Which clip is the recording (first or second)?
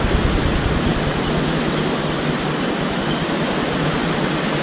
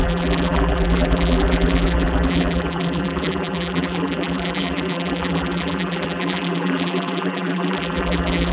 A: first